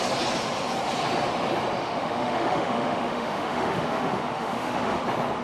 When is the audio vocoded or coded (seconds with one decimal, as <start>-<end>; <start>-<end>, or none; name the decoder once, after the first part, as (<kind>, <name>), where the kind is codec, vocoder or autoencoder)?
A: 1.8-5.0 (autoencoder, DAC-VAE)